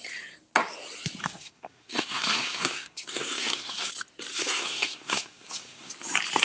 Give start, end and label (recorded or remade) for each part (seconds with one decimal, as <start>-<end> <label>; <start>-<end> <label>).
0.0-1.2 recorded; 1.2-3.9 remade; 3.9-4.3 recorded; 4.3-5.9 remade; 5.9-6.4 recorded